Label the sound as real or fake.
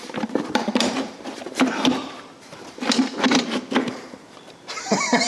fake